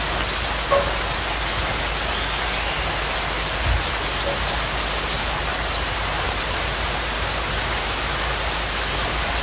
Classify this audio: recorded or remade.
recorded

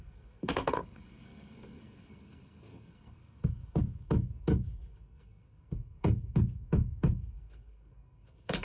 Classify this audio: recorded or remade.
remade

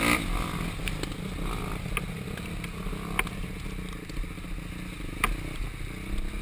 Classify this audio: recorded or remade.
recorded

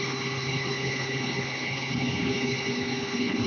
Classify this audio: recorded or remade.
remade